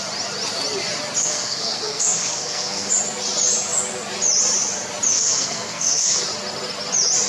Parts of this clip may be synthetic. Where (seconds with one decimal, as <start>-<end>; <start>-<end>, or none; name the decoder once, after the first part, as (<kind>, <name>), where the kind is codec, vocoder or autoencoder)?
1.2-2.9 (codec, SNAC); 5.1-6.2